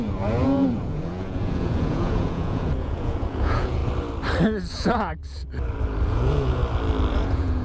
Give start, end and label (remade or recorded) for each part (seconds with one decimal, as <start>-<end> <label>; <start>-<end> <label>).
0.0-3.8 remade; 3.8-4.7 recorded; 4.7-5.4 remade; 5.4-6.1 recorded; 6.1-6.6 remade; 6.6-7.1 recorded; 7.1-7.6 remade